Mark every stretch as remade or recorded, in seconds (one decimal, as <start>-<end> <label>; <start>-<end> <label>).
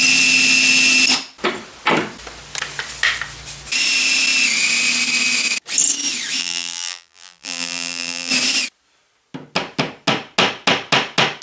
0.0-6.4 recorded; 6.4-8.3 remade; 8.3-11.4 recorded